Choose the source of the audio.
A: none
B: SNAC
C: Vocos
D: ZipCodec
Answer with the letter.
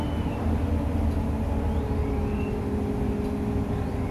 A